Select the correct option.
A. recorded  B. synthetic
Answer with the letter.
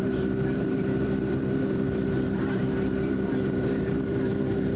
B